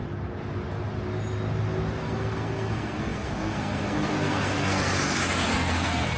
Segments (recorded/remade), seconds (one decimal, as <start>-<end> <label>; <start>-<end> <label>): 0.0-2.0 recorded; 2.0-6.2 remade

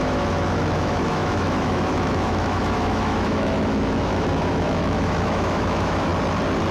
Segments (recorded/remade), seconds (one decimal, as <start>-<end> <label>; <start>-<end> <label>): 0.0-6.1 remade; 6.1-6.7 recorded

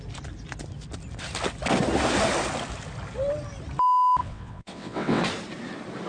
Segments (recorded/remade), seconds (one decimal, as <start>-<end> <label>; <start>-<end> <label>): 0.0-4.2 recorded; 4.2-5.2 remade; 5.2-6.1 recorded

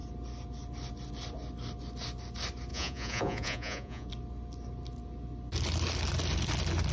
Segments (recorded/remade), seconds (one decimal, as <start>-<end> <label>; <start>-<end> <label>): 0.0-2.7 recorded; 2.7-4.1 remade; 4.1-6.9 recorded